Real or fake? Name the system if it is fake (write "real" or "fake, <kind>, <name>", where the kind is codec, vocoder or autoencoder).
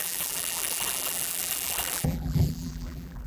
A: fake, vocoder, BigVGAN v2